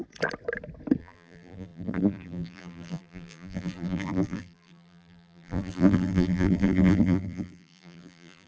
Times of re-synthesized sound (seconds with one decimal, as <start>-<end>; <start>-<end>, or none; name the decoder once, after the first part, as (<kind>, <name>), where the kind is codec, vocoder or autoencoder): 1.0-8.5 (vocoder, BigVGAN v2)